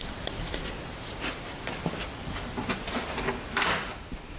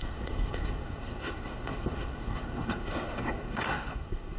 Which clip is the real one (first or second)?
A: first